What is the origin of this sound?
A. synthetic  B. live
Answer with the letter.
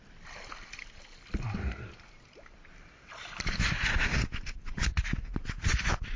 B